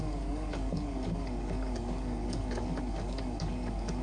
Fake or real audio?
fake